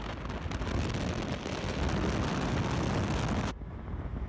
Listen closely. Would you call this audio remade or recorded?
recorded